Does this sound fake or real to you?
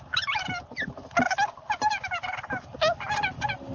real